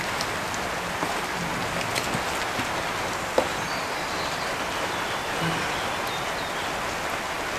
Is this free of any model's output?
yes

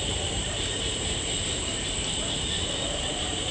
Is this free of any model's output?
no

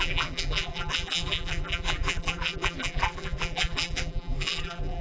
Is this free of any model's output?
no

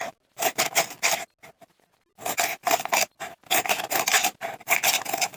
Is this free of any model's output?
yes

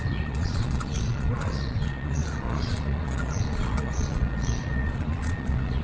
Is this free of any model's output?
no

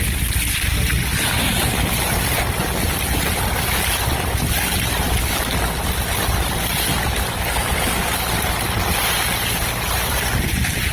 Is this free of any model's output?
yes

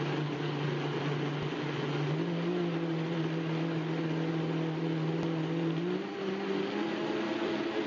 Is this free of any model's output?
yes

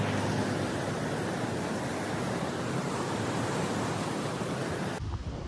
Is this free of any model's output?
yes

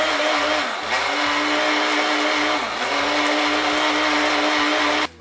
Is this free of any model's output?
yes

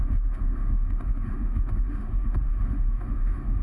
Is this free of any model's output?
no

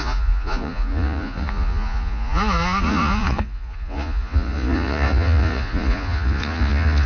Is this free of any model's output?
no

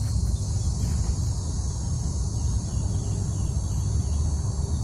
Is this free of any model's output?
yes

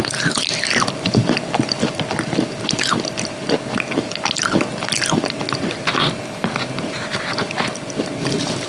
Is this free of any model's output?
no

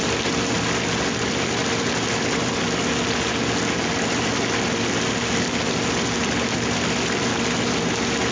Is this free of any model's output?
yes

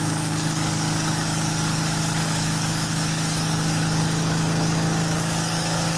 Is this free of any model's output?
no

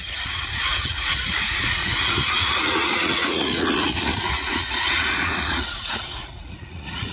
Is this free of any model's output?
no